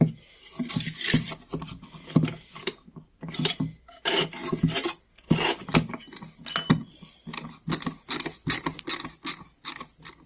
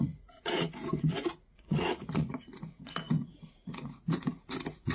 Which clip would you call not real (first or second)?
second